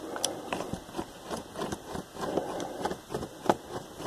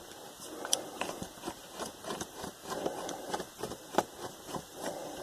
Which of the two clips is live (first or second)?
first